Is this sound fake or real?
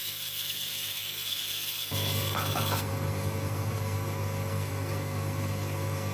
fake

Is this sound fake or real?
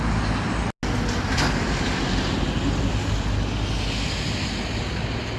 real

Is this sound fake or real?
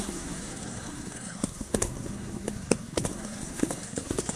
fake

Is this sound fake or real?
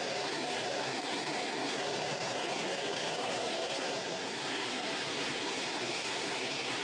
fake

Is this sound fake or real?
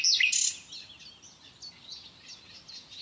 real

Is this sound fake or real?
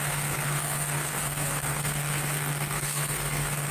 fake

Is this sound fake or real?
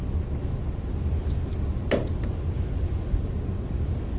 real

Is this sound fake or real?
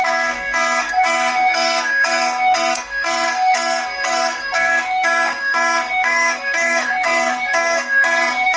fake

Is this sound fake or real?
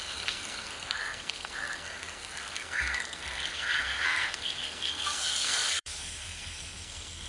fake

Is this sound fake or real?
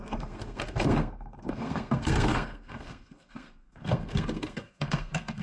fake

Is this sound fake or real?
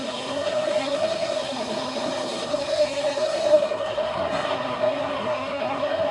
fake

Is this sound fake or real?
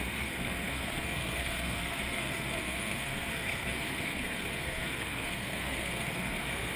fake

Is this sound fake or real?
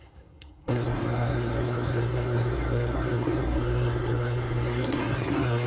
fake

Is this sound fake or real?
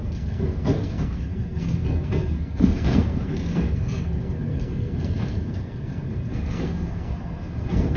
fake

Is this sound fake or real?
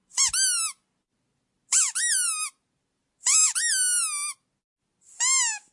real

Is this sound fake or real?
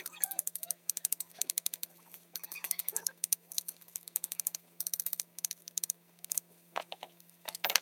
fake